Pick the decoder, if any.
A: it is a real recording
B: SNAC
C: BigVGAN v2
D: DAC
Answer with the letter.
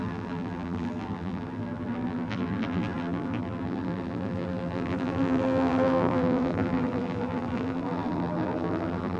C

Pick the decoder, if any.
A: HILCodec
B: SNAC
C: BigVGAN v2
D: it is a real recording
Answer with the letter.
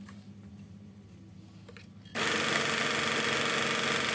D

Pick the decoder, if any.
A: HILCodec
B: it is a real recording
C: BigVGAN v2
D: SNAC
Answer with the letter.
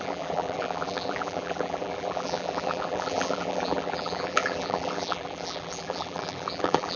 C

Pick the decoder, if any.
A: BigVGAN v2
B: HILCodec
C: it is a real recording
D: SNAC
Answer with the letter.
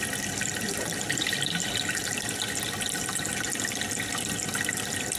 C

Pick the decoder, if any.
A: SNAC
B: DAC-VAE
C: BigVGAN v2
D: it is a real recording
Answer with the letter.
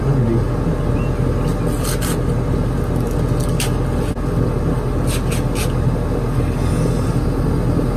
D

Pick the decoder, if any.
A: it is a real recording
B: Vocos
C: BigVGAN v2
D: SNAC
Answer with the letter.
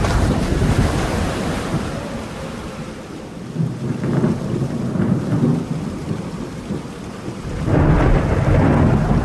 C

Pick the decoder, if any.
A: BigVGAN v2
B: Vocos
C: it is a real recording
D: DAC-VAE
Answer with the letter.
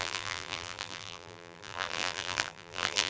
A